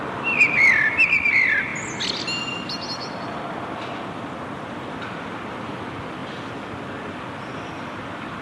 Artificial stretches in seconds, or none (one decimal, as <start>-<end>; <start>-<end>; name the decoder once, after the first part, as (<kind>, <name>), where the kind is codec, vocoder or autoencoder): none

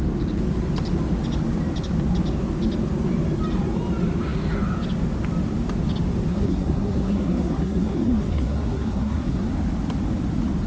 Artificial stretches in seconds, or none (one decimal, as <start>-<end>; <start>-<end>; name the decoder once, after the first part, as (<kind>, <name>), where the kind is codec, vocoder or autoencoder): 6.3-9.5 (codec, SNAC)

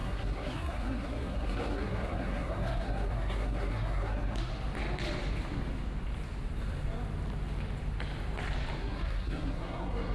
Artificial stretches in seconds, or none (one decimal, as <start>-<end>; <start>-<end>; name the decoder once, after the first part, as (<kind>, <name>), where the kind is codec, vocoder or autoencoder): 0.0-4.5 (codec, SNAC); 8.8-10.1

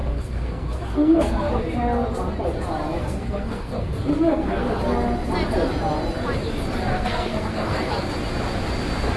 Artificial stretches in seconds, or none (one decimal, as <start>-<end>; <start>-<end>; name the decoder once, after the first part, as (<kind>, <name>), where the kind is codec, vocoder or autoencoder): 0.0-1.6 (codec, SNAC); 3.0-4.8; 6.9-7.9

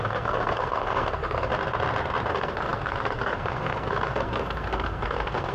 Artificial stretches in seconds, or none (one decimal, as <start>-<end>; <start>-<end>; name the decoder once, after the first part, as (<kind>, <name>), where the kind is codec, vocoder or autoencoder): 0.0-1.5 (codec, SNAC); 2.3-5.5

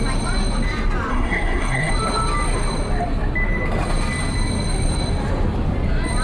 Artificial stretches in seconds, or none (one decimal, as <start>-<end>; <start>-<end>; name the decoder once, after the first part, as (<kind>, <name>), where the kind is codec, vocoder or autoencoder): 1.1-1.9 (codec, SNAC)

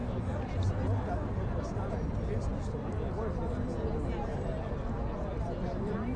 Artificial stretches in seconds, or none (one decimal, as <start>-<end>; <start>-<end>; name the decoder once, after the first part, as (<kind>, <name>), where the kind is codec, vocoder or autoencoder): none